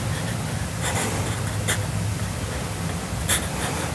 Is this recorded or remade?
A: recorded